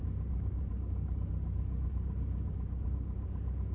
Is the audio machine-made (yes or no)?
yes